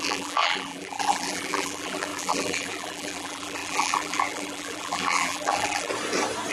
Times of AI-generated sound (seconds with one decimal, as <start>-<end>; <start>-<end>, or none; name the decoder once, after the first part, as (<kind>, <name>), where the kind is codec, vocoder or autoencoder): 0.0-5.9 (vocoder, BigVGAN v2)